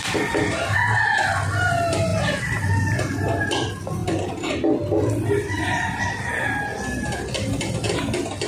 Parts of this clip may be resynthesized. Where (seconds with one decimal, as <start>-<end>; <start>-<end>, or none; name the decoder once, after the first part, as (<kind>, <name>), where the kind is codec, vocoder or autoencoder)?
2.1-2.6 (vocoder, BigVGAN v2)